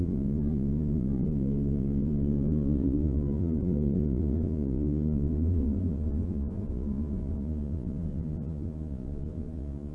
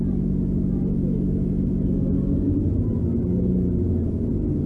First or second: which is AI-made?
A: first